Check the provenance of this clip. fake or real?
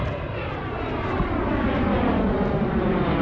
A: real